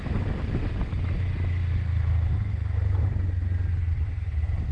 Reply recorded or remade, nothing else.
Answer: recorded